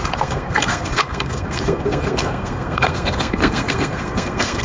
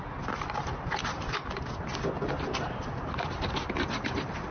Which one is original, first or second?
second